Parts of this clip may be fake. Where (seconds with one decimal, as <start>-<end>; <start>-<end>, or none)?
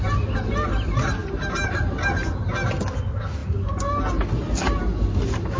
none